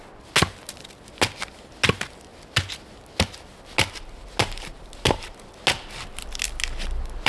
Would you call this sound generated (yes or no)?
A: no